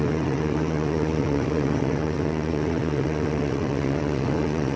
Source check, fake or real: fake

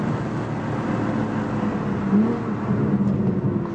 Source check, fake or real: real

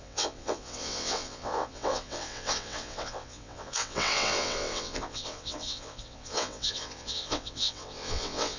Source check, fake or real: fake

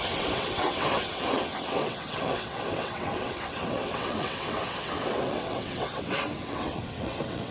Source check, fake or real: fake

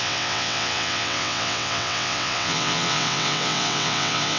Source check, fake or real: fake